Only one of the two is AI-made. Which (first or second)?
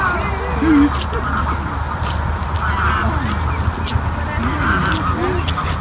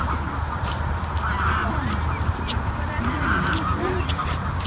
second